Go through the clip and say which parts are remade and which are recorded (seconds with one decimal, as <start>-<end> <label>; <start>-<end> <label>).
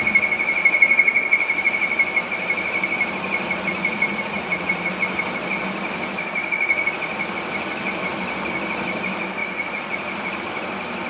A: 0.0-3.7 recorded; 3.7-4.9 remade; 4.9-9.4 recorded; 9.4-10.4 remade; 10.4-11.1 recorded